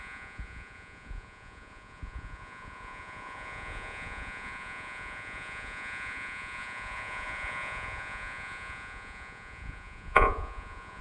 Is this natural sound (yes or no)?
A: no